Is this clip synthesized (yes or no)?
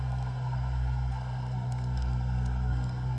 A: yes